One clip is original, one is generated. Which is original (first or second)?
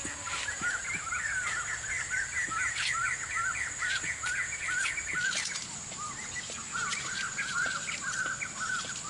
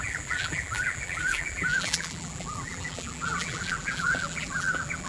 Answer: first